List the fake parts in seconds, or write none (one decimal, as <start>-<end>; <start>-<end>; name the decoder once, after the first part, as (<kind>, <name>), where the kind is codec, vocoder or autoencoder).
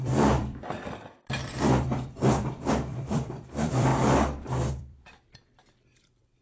0.0-3.9 (vocoder, BigVGAN v2); 4.7-6.4